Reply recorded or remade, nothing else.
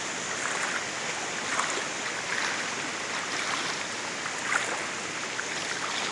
recorded